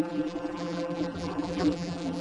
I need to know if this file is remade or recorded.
remade